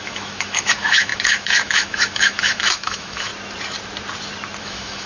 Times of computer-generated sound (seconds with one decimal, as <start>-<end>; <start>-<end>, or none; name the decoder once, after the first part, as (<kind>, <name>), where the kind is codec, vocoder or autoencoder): 0.0-3.3 (autoencoder, DAC-VAE); 4.6-5.1